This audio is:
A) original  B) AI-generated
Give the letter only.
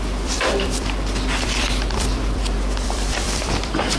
B